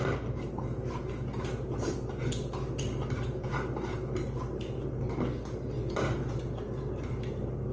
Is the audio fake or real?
real